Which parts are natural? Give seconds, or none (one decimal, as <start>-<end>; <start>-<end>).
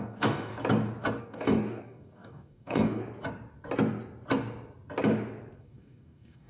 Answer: 0.5-1.2; 3.0-5.6